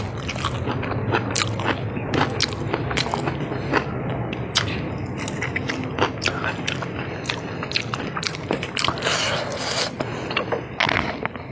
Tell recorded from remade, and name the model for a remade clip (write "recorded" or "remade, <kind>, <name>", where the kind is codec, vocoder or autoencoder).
recorded